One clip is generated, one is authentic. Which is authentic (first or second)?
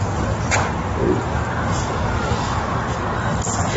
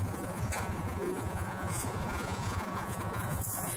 first